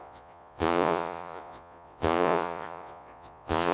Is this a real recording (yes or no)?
no